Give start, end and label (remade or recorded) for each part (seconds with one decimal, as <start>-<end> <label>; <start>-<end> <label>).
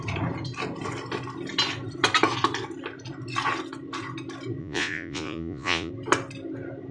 0.0-4.6 recorded; 4.6-5.9 remade; 5.9-6.9 recorded